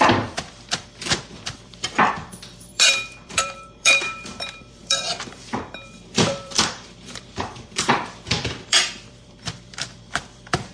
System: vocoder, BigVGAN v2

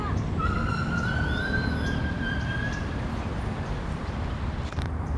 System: vocoder, BigVGAN v2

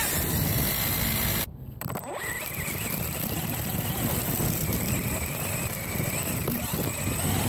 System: vocoder, BigVGAN v2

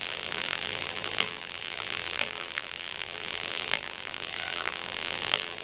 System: vocoder, BigVGAN v2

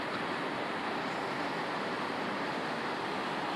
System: none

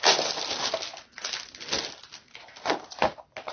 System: none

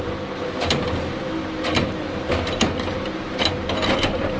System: none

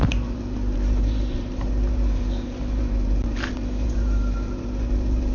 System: vocoder, BigVGAN v2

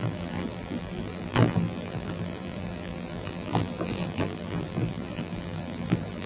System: vocoder, BigVGAN v2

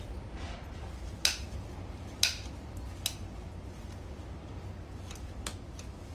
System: none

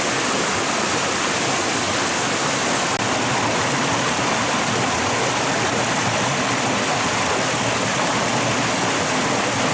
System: none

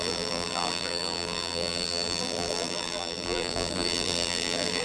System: vocoder, BigVGAN v2